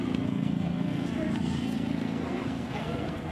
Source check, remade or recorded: remade